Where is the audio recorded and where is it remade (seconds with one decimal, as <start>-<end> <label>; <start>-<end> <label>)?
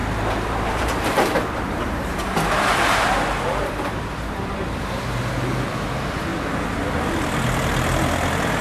0.0-4.8 remade; 4.8-8.6 recorded